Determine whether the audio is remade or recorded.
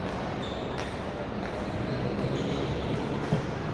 recorded